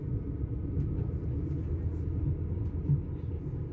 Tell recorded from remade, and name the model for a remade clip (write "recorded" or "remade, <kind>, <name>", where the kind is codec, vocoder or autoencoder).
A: recorded